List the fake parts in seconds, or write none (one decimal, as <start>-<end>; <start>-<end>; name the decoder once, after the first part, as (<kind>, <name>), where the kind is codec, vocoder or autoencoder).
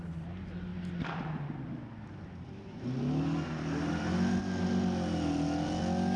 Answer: none